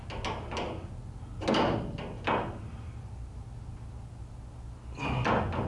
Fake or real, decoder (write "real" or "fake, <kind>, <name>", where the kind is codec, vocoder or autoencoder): real